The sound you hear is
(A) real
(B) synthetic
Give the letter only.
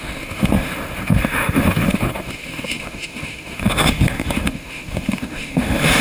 B